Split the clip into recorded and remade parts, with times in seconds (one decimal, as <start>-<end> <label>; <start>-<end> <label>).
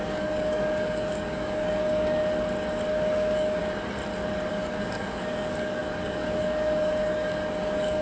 0.0-2.2 remade; 2.2-2.9 recorded; 2.9-3.6 remade; 3.6-4.5 recorded; 4.5-8.0 remade